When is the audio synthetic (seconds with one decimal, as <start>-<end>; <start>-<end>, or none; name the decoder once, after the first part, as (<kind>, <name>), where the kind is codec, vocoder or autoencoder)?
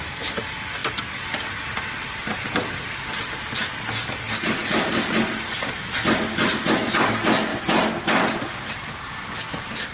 none